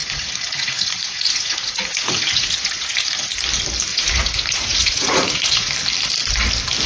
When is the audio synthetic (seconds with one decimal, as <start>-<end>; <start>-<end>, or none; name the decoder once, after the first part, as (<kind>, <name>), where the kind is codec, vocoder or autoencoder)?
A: 0.0-3.3 (vocoder, Vocos); 3.9-5.7